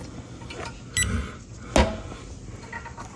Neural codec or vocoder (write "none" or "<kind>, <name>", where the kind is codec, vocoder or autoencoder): none